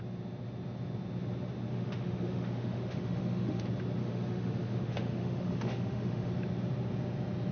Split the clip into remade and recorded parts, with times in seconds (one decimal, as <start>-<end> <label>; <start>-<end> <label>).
0.0-1.7 recorded; 1.7-3.6 remade; 3.6-4.0 recorded; 4.0-6.3 remade; 6.3-7.5 recorded